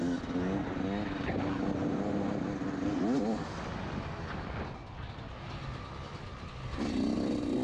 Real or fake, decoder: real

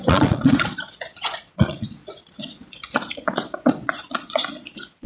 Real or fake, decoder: fake, vocoder, Vocos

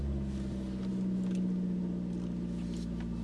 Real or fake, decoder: real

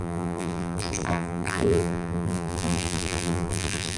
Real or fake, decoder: fake, vocoder, BigVGAN v2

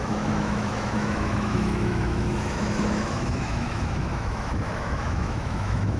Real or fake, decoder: fake, autoencoder, DAC-VAE